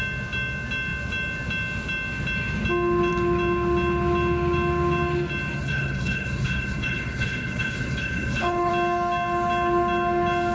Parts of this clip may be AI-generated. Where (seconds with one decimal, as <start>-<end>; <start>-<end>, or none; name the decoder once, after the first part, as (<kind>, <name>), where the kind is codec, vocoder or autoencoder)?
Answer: 5.6-8.7 (codec, HILCodec)